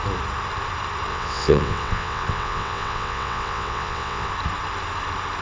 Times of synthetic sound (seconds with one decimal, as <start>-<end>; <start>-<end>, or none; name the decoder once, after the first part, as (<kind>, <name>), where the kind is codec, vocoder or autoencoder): 1.1-4.3 (vocoder, WaveNeXt)